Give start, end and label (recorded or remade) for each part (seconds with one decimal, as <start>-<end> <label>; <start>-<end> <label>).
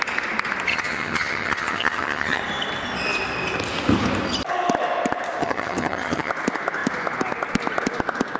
0.0-0.7 recorded; 0.7-2.4 remade; 2.4-5.4 recorded; 5.4-6.3 remade; 6.3-8.4 recorded